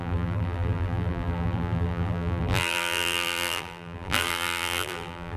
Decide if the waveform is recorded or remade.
remade